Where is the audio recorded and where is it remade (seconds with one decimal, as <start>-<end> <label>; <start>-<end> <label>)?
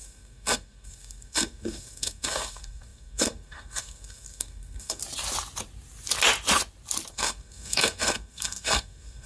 0.0-5.0 remade; 5.0-7.1 recorded; 7.1-9.3 remade